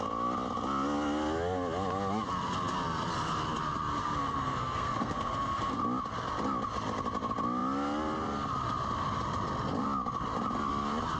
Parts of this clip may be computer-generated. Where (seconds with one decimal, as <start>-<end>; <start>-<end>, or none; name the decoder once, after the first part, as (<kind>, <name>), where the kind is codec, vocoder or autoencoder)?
4.0-5.8 (codec, SNAC)